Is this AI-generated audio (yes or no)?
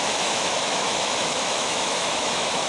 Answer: yes